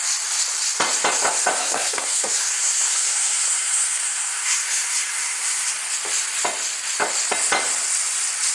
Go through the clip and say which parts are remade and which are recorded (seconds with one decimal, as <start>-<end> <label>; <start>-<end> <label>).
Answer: 0.0-1.6 recorded; 1.6-5.7 remade; 5.7-8.5 recorded